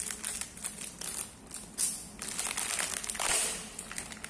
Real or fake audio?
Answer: real